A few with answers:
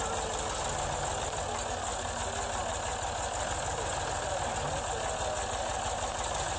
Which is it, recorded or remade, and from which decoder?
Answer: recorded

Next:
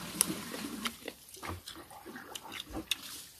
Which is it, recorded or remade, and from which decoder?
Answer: recorded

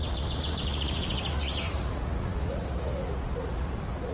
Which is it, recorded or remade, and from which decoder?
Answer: remade, vocoder, Vocos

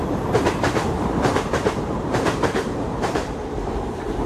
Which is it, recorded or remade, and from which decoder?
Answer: remade, vocoder, BigVGAN v2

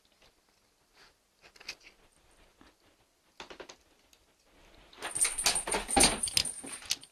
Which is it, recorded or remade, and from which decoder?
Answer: recorded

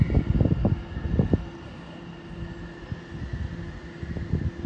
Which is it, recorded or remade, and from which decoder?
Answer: recorded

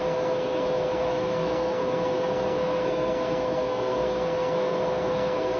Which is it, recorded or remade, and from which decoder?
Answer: remade, codec, SNAC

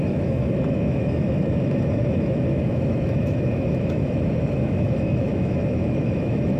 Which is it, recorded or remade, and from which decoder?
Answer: remade, autoencoder, DAC-VAE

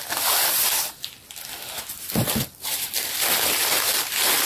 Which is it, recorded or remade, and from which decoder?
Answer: remade, vocoder, BigVGAN v2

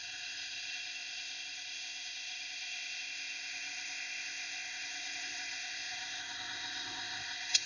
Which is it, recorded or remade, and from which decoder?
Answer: remade, codec, ZipCodec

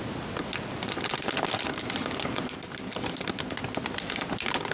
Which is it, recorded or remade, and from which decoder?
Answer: recorded